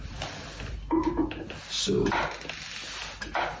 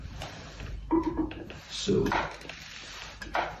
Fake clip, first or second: second